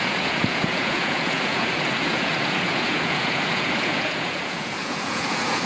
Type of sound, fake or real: fake